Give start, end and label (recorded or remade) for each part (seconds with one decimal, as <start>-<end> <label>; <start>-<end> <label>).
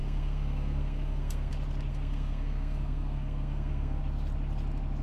0.0-1.5 remade; 1.5-1.9 recorded; 1.9-4.0 remade; 4.0-5.0 recorded